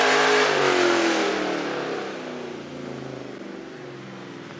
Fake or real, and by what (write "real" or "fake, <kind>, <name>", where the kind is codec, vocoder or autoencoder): real